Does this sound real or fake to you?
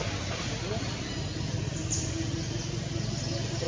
real